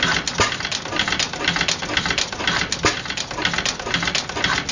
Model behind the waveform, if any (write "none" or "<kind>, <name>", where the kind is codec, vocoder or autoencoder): none